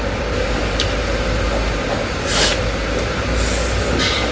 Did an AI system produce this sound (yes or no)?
no